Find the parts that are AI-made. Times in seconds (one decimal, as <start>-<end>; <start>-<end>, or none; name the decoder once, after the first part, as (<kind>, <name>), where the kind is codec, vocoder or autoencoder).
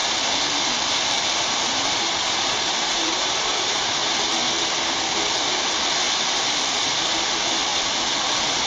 0.6-4.0 (vocoder, BigVGAN v2); 6.1-7.7